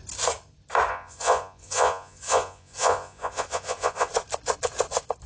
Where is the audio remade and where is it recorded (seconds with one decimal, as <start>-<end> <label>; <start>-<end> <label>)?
0.0-0.9 recorded; 0.9-4.1 remade; 4.1-5.3 recorded